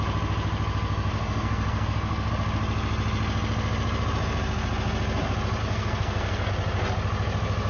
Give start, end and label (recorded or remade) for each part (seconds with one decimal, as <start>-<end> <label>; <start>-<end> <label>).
0.0-1.1 recorded; 1.1-2.3 remade; 2.3-5.6 recorded; 5.6-6.5 remade; 6.5-7.7 recorded